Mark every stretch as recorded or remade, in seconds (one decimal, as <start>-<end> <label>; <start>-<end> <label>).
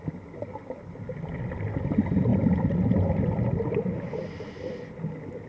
0.0-5.5 recorded